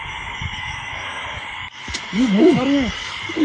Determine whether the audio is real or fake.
fake